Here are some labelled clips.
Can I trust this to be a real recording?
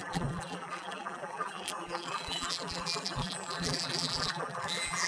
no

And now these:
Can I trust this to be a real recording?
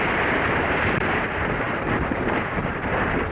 no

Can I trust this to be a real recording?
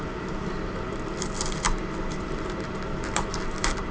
no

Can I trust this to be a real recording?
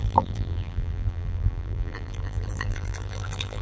no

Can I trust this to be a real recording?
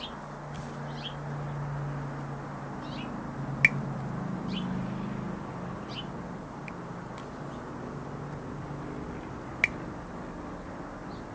yes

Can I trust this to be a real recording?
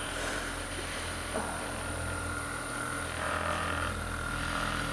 no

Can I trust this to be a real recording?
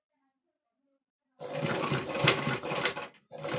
no